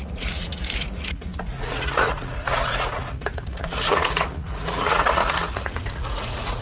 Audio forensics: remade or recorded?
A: remade